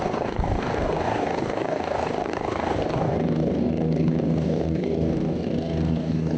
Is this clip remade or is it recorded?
remade